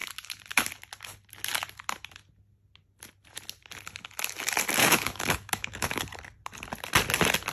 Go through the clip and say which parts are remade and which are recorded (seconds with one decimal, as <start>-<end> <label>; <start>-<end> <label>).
0.0-4.8 recorded; 4.8-6.0 remade; 6.0-7.5 recorded